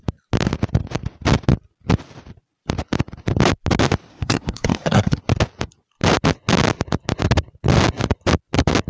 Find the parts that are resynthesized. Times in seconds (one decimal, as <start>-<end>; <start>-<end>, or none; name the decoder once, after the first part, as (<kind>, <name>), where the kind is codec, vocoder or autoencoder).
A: 4.1-5.2 (codec, SNAC)